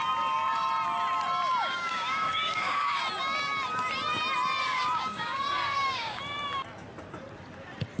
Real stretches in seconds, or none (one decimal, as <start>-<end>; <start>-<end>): 0.0-1.6; 3.0-4.6; 6.2-8.0